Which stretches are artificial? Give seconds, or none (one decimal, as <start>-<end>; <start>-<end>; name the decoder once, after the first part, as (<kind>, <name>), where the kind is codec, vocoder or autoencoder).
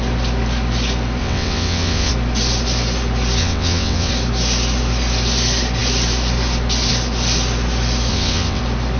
1.2-2.1 (vocoder, WaveNeXt); 3.4-4.1; 8.1-8.6